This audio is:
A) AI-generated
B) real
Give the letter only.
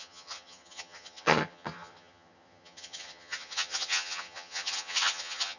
A